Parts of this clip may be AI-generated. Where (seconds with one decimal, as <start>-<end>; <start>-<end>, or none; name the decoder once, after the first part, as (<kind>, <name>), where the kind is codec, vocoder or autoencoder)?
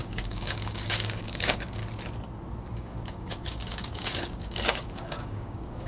0.0-1.8 (codec, DAC); 2.7-5.9